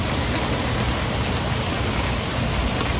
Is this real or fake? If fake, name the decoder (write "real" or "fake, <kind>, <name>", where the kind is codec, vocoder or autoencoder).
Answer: real